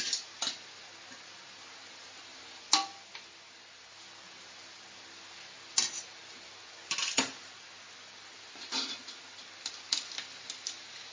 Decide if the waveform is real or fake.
real